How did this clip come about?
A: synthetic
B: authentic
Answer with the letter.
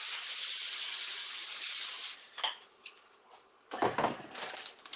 A